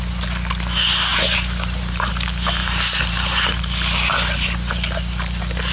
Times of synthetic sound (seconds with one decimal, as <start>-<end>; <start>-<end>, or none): 1.1-2.1; 2.6-3.6